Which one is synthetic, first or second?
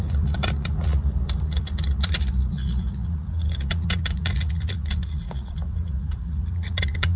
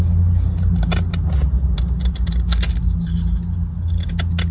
first